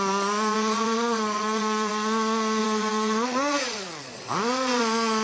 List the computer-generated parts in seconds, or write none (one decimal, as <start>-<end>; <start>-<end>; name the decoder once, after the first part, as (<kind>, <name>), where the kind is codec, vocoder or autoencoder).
0.5-1.9 (vocoder, Vocos); 2.6-4.8